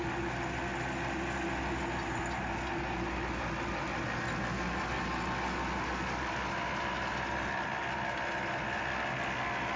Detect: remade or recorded recorded